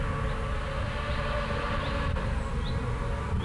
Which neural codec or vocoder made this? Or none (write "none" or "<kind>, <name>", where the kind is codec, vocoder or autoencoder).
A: none